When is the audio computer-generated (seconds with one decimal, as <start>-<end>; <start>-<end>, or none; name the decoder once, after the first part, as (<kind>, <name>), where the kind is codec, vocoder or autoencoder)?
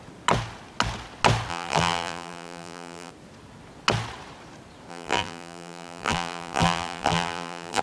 1.5-3.1 (vocoder, BigVGAN v2); 4.9-7.8